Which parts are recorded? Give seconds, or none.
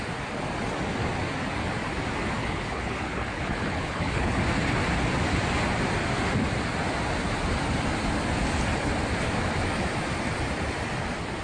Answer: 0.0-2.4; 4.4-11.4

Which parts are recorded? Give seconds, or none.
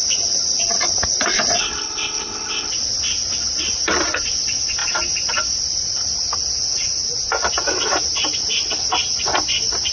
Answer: 0.0-1.6; 2.7-9.9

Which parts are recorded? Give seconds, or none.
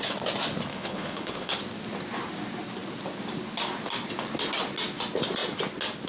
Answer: 0.0-0.7; 1.6-6.1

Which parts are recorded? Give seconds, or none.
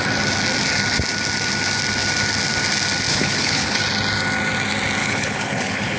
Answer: 0.0-3.1; 3.8-5.0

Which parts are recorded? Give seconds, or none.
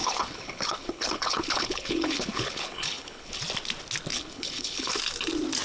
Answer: 3.4-4.1; 5.0-5.6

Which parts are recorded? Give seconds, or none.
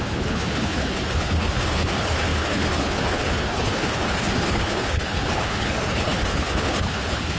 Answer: none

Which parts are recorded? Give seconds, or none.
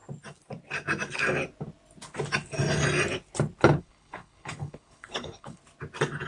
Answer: 0.0-3.8; 5.6-6.3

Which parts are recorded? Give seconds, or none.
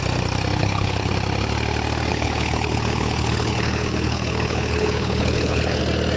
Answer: 0.0-0.6; 1.1-2.1; 5.8-6.2